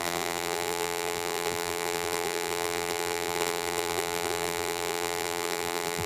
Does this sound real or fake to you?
fake